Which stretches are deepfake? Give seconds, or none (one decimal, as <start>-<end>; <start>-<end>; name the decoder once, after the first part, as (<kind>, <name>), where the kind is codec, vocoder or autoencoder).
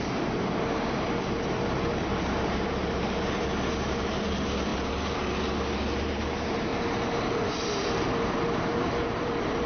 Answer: 0.0-6.7 (vocoder, BigVGAN v2); 7.6-9.7